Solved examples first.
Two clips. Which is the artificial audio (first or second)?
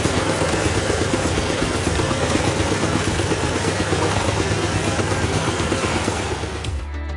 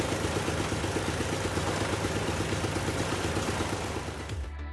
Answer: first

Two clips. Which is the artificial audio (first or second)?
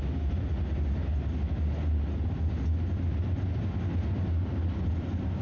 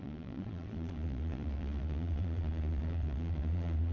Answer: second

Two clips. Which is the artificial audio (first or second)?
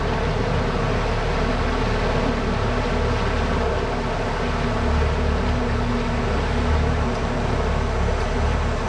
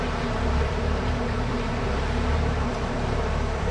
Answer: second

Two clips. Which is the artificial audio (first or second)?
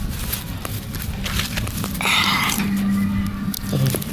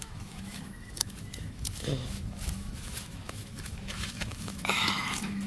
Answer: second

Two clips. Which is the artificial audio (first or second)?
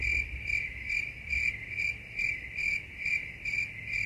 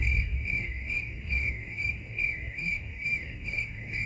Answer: second